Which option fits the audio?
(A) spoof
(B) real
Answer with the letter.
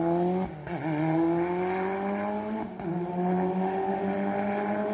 B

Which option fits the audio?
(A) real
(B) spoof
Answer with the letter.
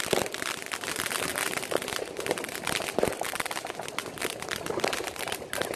B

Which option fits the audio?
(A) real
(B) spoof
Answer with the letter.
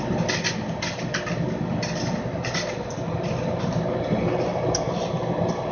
A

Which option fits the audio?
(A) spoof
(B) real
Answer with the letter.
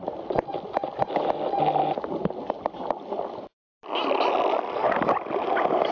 B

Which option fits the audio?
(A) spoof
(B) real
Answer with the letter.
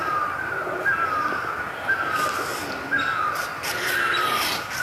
B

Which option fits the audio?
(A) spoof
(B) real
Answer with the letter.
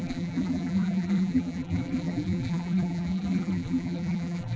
A